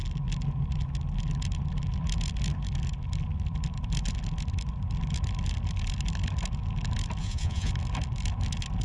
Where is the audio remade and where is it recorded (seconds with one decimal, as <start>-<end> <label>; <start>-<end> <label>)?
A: 0.0-7.2 recorded; 7.2-7.7 remade; 7.7-8.8 recorded